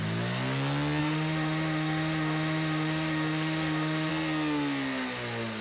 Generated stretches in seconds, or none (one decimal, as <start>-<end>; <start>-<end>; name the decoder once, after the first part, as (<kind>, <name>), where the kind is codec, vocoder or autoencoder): 1.0-4.1 (autoencoder, DAC-VAE)